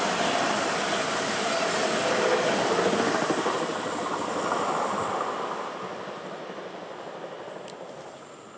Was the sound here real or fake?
real